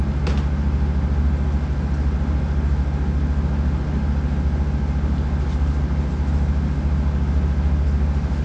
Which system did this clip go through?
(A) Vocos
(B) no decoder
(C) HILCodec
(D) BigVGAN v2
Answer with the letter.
B